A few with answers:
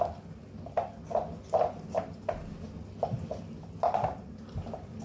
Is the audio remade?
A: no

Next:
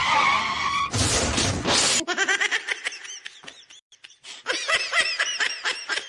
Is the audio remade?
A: yes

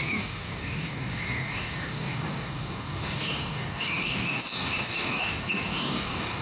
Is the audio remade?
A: yes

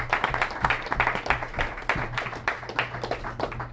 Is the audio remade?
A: no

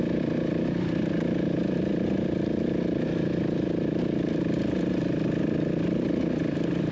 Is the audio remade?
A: no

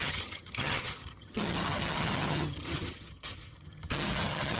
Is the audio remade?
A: yes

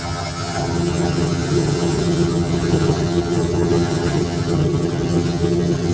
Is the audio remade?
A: yes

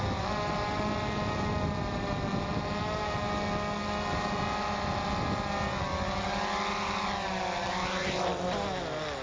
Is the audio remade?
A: no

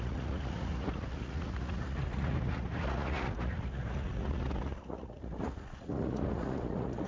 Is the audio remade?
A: yes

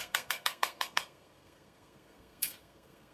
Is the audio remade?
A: yes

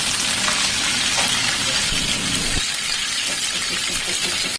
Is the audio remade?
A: no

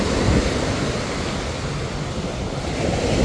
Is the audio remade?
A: no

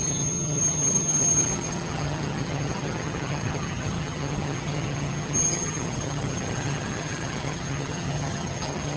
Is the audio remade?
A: yes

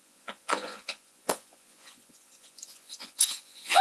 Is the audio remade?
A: yes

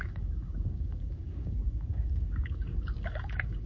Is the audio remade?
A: yes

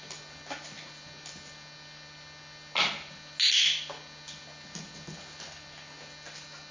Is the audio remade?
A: no